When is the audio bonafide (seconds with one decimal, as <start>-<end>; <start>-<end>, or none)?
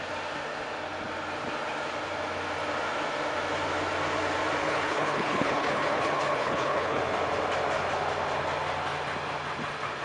0.0-4.6; 7.0-10.0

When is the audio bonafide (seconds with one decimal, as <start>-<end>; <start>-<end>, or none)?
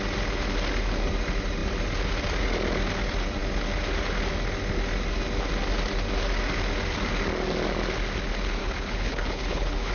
0.0-8.6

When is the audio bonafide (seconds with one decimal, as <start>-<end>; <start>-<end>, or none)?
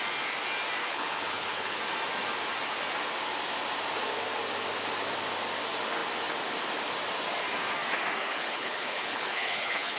0.0-0.8; 1.8-8.2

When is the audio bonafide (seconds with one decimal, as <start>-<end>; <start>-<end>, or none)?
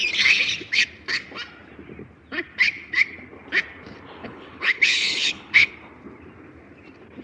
0.0-4.2; 5.7-7.2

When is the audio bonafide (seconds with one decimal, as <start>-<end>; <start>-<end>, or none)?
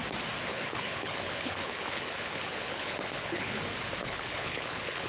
0.0-0.5; 3.6-4.0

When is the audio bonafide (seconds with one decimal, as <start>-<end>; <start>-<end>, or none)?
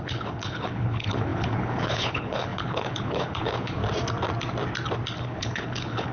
3.8-5.2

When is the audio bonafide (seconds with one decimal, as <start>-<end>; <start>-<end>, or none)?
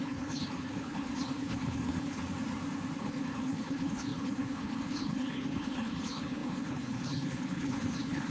2.2-3.0